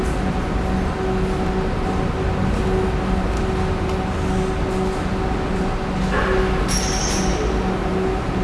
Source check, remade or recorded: recorded